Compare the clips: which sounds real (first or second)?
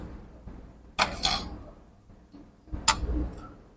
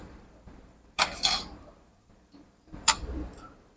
first